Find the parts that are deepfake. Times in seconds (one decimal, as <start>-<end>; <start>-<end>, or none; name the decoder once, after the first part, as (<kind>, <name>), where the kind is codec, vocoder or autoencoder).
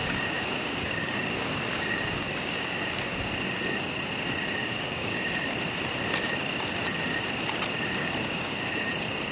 0.0-3.3 (codec, DAC); 4.6-5.4; 8.0-8.9